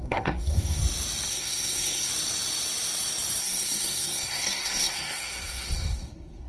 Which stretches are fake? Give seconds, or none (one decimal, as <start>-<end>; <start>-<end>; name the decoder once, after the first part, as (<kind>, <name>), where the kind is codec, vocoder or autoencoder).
0.0-0.8 (codec, SNAC); 1.3-2.1; 3.4-6.5